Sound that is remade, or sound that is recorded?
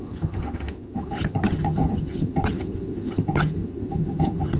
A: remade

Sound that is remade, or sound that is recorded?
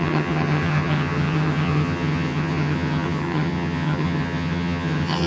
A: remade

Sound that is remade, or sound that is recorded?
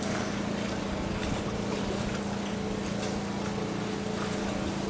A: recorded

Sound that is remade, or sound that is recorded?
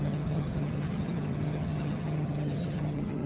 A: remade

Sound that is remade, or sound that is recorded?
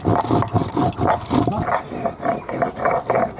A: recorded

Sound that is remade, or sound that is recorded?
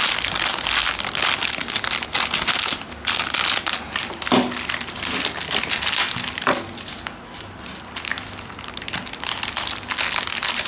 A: recorded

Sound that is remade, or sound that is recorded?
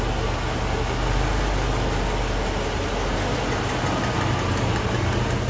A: recorded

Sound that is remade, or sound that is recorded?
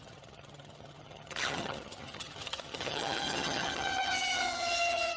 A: remade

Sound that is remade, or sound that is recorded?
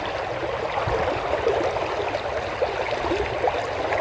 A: recorded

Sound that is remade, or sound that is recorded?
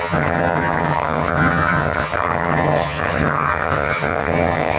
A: remade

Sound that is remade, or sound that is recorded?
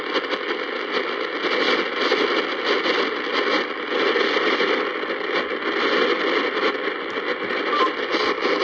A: recorded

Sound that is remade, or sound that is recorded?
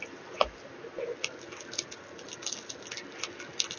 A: recorded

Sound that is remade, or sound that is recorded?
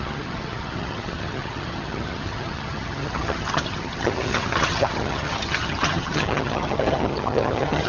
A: remade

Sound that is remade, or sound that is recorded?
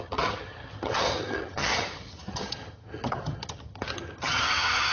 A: remade